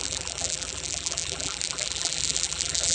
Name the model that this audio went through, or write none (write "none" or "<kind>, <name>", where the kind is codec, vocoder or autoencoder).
vocoder, BigVGAN v2